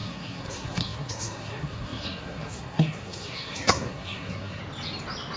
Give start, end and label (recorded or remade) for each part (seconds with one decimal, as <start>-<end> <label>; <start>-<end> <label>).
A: 0.0-4.6 remade; 4.6-5.4 recorded